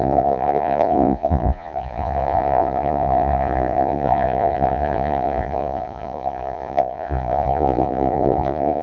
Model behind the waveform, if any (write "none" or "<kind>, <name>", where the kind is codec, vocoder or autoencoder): vocoder, Vocos